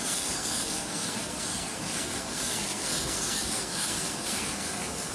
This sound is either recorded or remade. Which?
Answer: remade